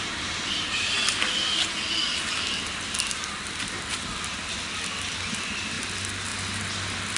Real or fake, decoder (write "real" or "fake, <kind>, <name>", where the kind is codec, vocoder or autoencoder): real